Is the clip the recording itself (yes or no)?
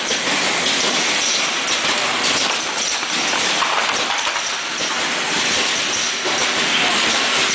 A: yes